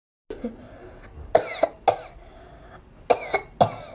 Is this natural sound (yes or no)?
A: yes